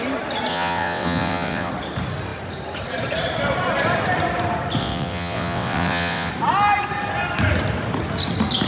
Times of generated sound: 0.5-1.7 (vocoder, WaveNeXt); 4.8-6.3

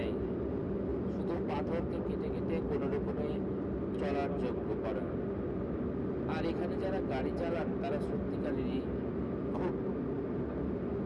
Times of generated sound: none

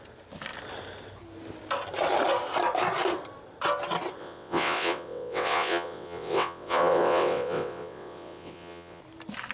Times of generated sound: 4.2-9.0 (vocoder, WaveNeXt)